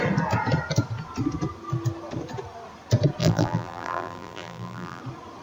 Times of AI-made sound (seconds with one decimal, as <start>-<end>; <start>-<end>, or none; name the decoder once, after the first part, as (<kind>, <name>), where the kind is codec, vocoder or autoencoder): 3.2-5.0 (vocoder, BigVGAN v2)